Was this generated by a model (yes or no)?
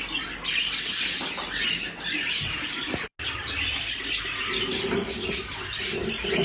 no